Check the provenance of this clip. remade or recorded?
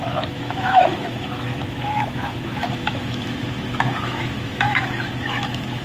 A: remade